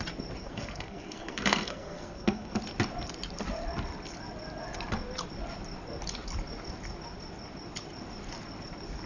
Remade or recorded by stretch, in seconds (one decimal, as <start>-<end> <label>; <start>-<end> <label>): 0.0-0.4 recorded; 0.4-2.6 remade; 2.6-9.1 recorded